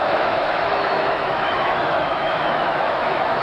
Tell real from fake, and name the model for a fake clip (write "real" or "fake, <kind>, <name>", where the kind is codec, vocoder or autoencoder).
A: fake, autoencoder, DAC-VAE